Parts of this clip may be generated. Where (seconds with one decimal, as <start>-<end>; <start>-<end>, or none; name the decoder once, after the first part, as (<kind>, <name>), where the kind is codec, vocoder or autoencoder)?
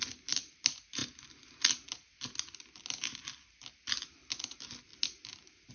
none